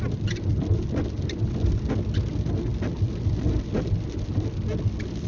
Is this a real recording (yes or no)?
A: yes